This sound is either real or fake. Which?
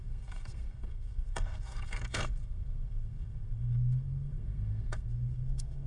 fake